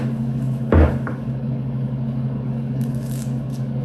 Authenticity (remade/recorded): remade